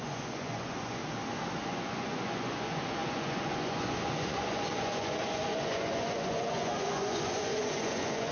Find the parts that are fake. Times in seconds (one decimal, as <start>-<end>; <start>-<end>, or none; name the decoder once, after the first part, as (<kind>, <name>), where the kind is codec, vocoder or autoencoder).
0.0-1.0 (vocoder, Vocos); 1.6-8.3